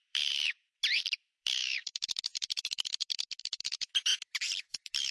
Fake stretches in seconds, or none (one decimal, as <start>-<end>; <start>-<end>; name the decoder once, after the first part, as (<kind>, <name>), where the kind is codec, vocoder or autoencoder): 0.0-5.1 (vocoder, BigVGAN v2)